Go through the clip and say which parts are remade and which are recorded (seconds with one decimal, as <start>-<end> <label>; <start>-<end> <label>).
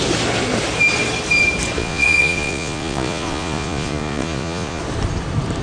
0.0-1.8 recorded; 1.8-4.8 remade; 4.8-5.6 recorded